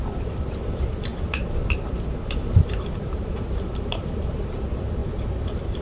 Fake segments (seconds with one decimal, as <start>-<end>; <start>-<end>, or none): 0.0-5.0